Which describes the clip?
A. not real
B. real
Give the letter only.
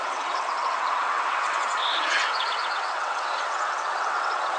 A